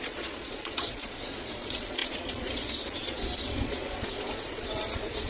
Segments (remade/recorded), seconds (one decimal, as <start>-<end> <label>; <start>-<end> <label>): 0.0-5.3 remade